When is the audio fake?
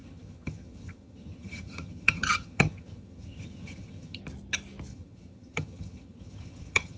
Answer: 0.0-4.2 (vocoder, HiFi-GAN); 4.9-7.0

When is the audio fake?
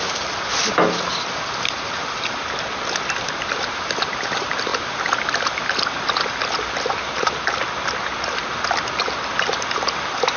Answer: none